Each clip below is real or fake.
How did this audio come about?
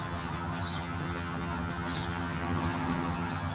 fake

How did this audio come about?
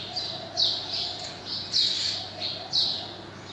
real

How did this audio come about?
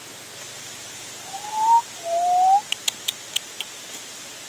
real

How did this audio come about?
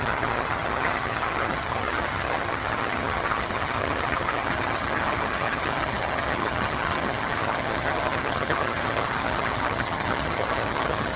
fake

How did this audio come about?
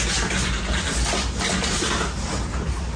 real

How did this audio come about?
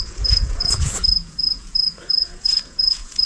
fake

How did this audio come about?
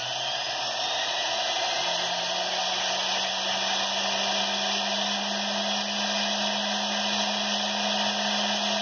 real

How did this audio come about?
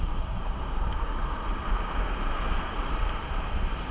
fake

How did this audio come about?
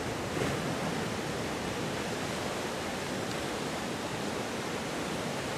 real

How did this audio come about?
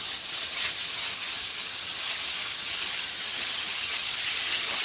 fake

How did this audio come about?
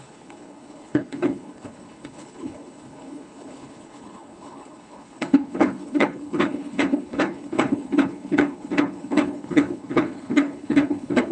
fake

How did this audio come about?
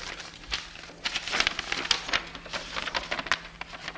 real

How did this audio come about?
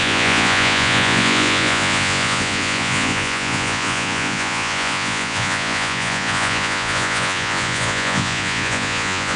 fake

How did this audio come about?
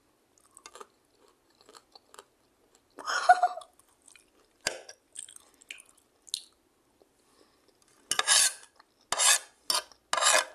real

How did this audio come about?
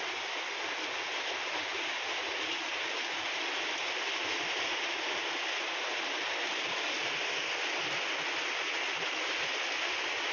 real